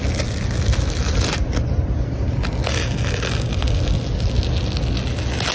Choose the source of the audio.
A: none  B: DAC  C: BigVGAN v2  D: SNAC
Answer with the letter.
A